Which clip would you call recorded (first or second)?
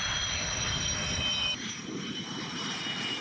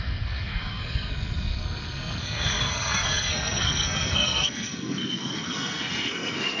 first